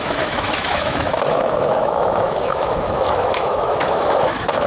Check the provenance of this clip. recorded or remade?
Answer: remade